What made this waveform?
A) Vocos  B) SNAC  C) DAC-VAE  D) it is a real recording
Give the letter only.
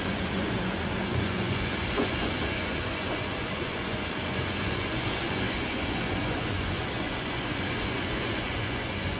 A